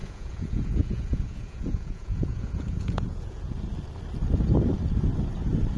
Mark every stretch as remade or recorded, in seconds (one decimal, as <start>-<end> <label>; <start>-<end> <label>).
0.0-3.5 remade; 3.5-5.8 recorded